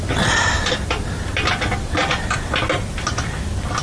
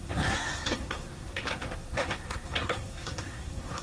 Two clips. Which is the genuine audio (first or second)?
first